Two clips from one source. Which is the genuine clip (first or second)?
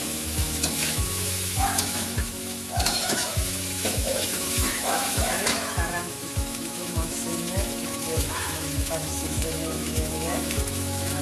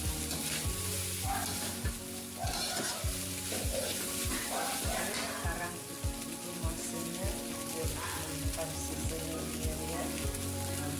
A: second